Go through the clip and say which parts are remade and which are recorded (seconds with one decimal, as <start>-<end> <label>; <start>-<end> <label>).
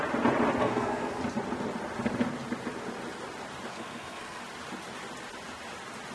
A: 0.0-0.6 recorded; 0.6-1.2 remade; 1.2-3.7 recorded; 3.7-4.4 remade; 4.4-6.1 recorded